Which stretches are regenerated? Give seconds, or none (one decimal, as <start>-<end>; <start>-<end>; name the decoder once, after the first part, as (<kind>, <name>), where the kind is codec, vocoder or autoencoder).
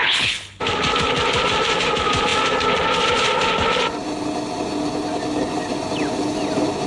0.0-0.6 (codec, HILCodec)